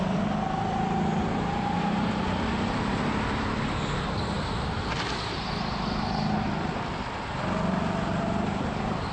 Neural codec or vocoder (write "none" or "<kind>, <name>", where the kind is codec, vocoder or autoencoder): none